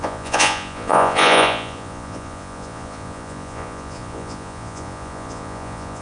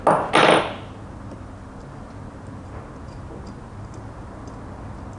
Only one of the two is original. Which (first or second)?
second